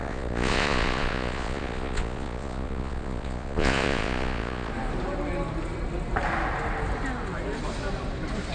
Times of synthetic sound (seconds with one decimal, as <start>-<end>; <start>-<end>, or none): 0.0-4.7